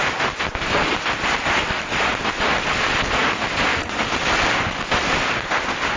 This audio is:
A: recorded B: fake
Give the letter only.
A